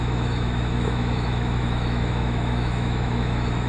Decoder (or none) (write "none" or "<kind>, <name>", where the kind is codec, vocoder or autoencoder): autoencoder, DAC-VAE